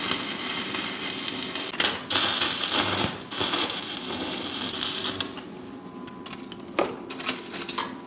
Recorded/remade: recorded